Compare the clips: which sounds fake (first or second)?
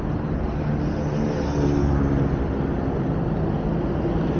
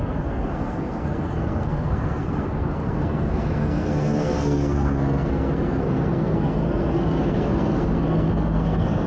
second